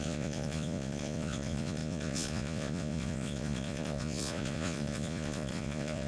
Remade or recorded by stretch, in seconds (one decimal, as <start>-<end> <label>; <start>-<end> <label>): 0.0-6.1 remade